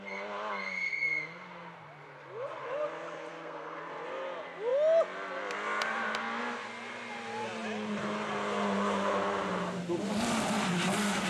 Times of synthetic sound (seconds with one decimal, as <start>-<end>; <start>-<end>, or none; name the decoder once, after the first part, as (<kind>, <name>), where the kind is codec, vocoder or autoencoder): 3.3-3.8 (codec, SNAC)